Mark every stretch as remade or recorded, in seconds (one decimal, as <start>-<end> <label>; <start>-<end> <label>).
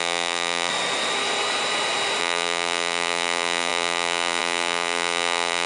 0.0-0.7 remade; 0.7-2.2 recorded; 2.2-5.7 remade